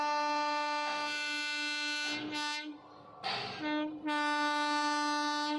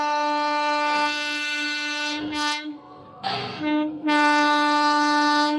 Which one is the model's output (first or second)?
second